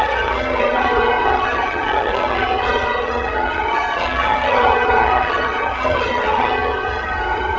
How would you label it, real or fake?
fake